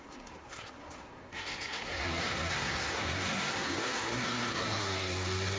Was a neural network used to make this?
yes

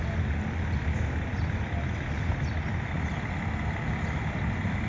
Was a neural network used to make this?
no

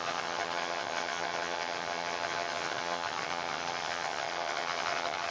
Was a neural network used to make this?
yes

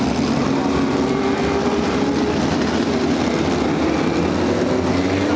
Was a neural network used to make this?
no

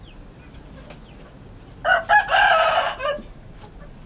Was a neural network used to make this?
no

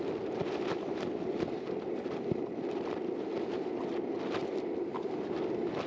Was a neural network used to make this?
no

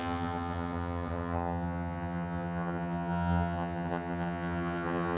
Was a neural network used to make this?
yes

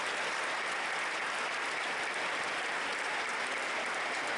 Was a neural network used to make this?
no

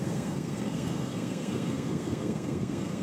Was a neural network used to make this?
yes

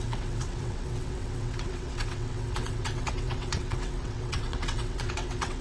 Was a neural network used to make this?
yes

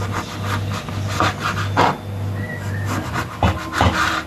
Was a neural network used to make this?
no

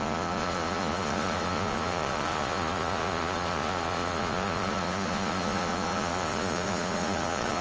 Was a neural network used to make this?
yes